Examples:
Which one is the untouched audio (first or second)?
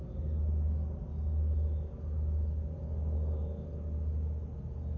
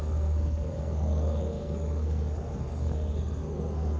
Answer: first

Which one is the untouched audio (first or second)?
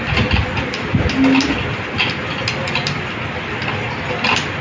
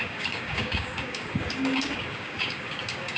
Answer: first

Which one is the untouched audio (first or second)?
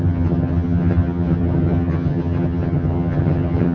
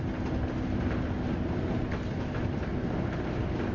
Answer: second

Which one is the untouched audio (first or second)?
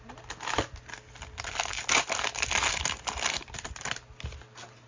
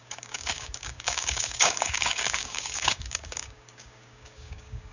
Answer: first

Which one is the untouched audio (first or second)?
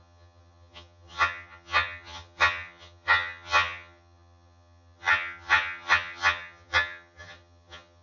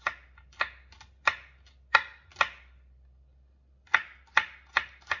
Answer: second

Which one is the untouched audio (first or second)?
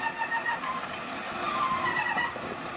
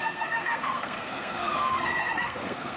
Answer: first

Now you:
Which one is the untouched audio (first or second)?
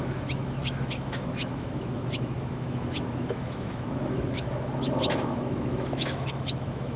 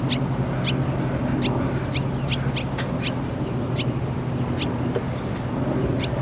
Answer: second